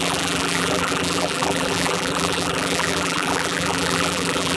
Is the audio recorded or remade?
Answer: remade